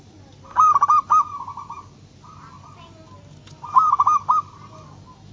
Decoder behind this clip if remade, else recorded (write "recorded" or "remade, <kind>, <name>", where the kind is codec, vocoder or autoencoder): recorded